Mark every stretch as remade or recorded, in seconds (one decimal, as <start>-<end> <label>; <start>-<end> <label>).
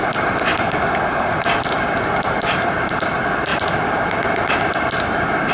0.0-5.5 recorded